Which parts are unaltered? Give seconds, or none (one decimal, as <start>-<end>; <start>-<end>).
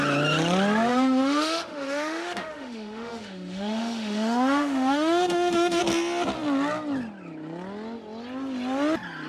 0.0-0.9; 5.8-9.3